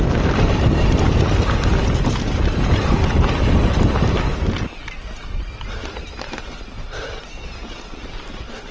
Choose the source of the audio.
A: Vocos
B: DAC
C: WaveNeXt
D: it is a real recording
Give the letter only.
D